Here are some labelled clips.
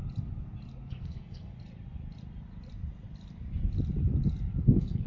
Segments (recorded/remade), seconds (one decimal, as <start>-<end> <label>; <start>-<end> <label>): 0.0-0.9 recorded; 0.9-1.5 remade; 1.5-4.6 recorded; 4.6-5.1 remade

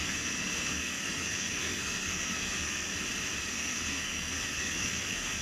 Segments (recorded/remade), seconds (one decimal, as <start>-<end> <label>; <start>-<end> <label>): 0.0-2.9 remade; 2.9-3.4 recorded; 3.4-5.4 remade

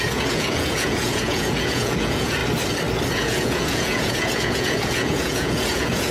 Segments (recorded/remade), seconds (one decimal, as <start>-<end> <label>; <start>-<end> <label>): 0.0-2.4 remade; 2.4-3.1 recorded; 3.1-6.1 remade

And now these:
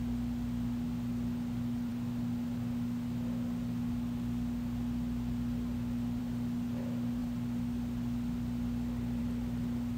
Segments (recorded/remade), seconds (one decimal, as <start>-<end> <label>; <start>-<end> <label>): 0.0-10.0 recorded

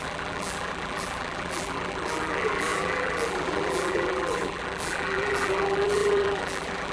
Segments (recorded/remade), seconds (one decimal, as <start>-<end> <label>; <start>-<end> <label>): 0.0-6.9 remade

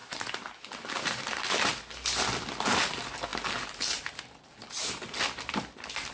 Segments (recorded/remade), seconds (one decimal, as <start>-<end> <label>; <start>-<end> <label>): 0.0-6.1 recorded